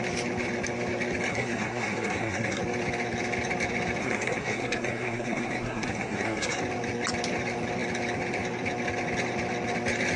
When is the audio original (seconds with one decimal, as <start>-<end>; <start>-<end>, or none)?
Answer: 0.0-1.3; 2.6-4.0; 6.6-10.2